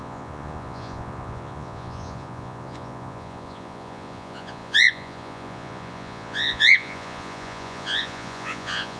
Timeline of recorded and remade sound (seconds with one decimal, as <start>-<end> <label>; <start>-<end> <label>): 0.0-9.0 remade